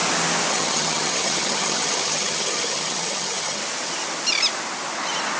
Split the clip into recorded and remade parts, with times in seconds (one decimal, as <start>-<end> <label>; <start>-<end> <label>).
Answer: 0.0-0.5 recorded; 0.5-3.6 remade; 3.6-5.4 recorded